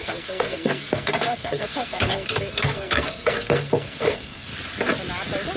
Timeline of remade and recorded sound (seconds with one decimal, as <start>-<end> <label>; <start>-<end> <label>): 0.0-4.5 remade; 4.5-5.6 recorded

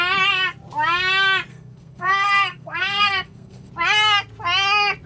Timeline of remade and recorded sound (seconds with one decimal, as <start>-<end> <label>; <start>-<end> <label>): 0.0-1.5 recorded; 1.5-3.7 remade; 3.7-5.1 recorded